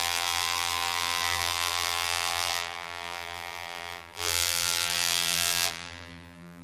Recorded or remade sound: remade